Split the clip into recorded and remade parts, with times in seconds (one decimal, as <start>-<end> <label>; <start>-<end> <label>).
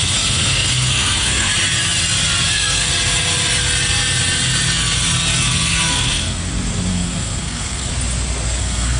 0.0-1.5 remade; 1.5-2.5 recorded; 2.5-2.9 remade; 2.9-5.5 recorded; 5.5-6.4 remade; 6.4-6.9 recorded; 6.9-7.9 remade; 7.9-8.6 recorded; 8.6-9.0 remade